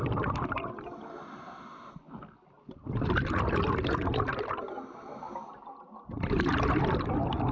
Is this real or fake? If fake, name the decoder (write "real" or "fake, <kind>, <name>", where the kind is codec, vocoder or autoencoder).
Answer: real